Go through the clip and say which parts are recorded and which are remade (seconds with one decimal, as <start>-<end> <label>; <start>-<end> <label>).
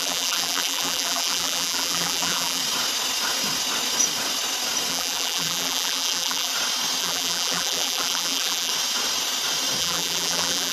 0.0-2.6 remade; 2.6-4.9 recorded; 4.9-6.5 remade; 6.5-7.0 recorded; 7.0-8.7 remade; 8.7-9.8 recorded; 9.8-10.7 remade